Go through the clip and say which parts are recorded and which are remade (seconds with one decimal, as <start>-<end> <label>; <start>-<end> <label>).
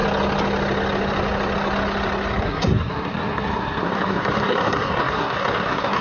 0.0-2.4 recorded; 2.4-6.0 remade